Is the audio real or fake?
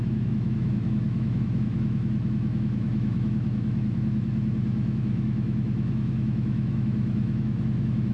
fake